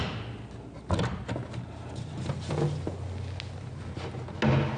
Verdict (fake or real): real